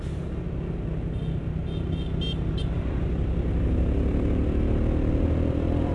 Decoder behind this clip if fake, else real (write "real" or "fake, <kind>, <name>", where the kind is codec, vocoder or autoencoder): real